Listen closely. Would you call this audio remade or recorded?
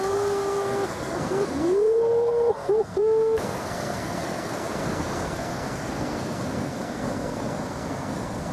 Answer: remade